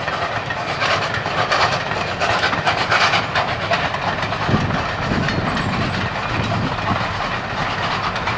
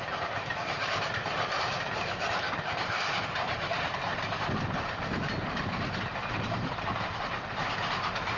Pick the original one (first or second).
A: first